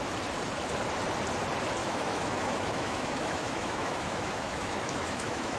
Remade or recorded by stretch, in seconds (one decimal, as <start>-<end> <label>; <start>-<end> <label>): 0.0-1.8 recorded; 1.8-5.6 remade